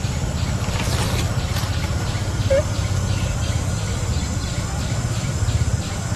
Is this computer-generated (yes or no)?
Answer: no